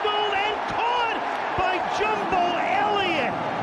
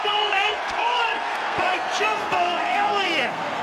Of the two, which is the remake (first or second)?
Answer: second